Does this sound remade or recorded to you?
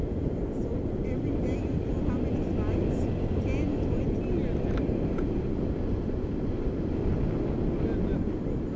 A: recorded